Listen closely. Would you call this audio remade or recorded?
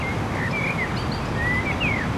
recorded